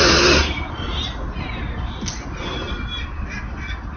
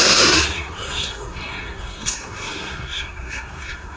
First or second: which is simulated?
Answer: second